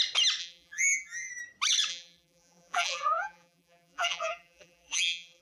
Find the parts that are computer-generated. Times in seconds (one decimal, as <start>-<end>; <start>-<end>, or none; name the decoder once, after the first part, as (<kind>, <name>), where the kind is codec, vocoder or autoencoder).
0.4-1.3 (vocoder, BigVGAN v2); 1.9-5.4